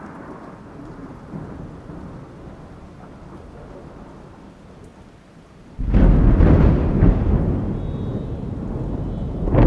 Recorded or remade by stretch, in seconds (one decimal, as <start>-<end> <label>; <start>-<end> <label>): 0.0-9.7 recorded